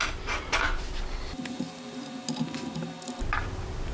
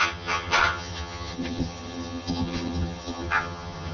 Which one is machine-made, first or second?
second